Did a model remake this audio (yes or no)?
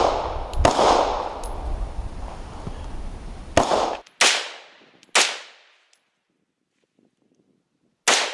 no